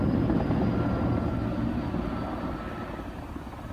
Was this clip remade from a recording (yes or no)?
no